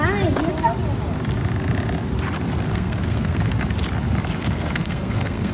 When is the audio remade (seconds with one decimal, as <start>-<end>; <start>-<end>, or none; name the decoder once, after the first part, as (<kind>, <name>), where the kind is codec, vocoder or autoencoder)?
2.7-3.5 (codec, SNAC); 4.4-5.5